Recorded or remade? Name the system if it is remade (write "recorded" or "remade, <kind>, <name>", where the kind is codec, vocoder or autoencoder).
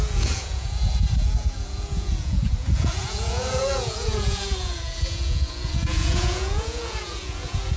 remade, vocoder, Vocos